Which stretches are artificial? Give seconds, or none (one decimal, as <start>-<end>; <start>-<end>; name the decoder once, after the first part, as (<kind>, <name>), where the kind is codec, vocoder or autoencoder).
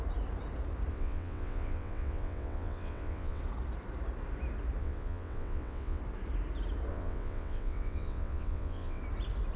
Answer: 0.9-3.4 (vocoder, WaveNeXt); 4.8-6.0; 6.9-9.0